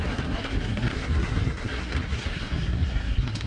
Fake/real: fake